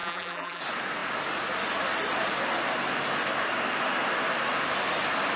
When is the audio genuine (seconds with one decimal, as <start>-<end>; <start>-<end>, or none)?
0.6-5.4